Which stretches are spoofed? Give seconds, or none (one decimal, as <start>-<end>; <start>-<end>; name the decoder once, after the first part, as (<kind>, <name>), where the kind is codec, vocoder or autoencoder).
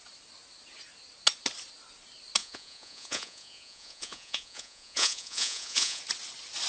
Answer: 2.4-6.0 (vocoder, Vocos)